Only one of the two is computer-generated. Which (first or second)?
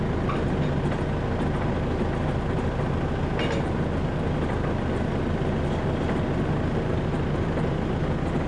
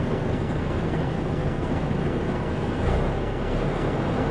second